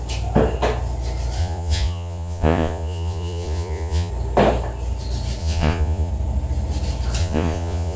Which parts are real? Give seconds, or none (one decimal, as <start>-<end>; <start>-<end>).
0.0-1.4; 4.1-5.4; 6.1-7.2